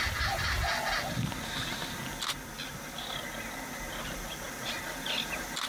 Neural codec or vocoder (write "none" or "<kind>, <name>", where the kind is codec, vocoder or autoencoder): none